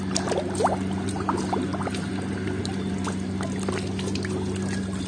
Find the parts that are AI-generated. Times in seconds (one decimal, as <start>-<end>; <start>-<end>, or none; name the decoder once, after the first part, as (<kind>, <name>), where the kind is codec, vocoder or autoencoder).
none